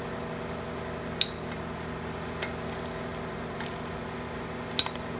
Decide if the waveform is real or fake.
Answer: real